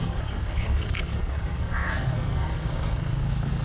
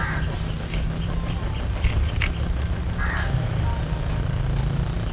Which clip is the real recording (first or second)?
second